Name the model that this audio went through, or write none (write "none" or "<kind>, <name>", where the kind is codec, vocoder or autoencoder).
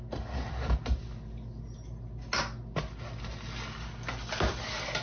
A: none